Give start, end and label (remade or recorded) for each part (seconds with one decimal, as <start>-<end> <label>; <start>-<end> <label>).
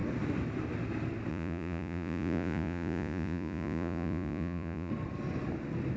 0.0-1.3 recorded; 1.3-4.9 remade; 4.9-6.0 recorded